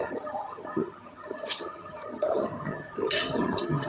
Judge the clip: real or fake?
fake